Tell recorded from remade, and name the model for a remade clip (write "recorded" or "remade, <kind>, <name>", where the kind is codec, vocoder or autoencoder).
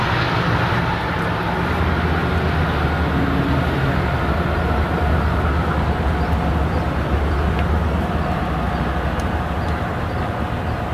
recorded